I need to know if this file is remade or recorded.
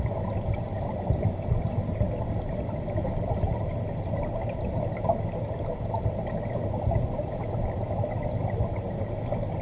recorded